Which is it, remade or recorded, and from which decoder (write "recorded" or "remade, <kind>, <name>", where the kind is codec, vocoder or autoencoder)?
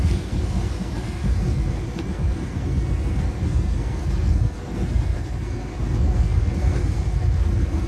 remade, codec, SNAC